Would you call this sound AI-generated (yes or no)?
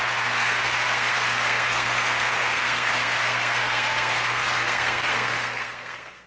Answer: yes